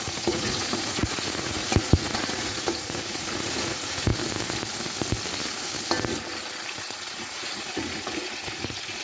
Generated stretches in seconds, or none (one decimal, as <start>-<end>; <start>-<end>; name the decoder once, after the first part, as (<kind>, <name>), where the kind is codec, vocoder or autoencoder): 0.0-4.1 (vocoder, Vocos); 6.7-9.0

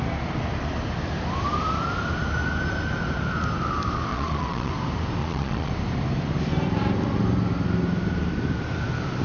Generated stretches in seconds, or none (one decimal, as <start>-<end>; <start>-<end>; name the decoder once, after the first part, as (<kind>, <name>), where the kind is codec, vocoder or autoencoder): 4.1-4.7 (vocoder, Vocos); 5.2-5.7

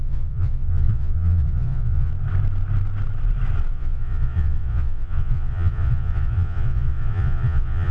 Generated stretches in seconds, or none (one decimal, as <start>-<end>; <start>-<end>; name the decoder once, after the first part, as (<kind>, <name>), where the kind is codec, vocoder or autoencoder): 0.0-2.1 (vocoder, Vocos); 3.7-7.9

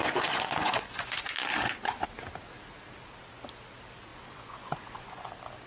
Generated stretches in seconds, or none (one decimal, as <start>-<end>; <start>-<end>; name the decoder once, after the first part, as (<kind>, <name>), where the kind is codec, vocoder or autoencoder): 0.0-1.5 (vocoder, Vocos); 4.1-5.3

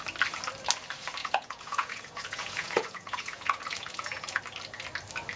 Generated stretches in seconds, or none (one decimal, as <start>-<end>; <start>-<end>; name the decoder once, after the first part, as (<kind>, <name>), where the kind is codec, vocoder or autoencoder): 1.2-4.4 (vocoder, Vocos)